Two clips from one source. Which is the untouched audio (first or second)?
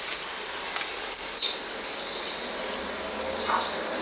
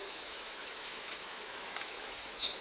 first